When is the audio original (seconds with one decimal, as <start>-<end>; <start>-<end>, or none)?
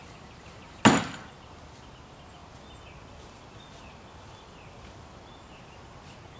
0.8-6.4